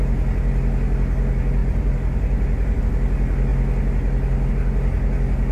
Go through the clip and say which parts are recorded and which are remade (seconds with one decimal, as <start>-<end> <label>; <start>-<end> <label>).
0.0-1.6 recorded; 1.6-2.8 remade; 2.8-5.5 recorded